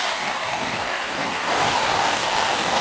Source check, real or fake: fake